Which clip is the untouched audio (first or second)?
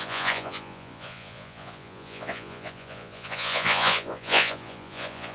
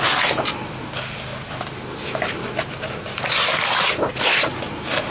second